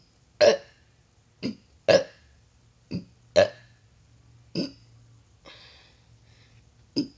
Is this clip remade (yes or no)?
no